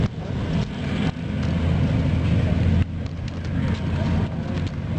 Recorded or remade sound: recorded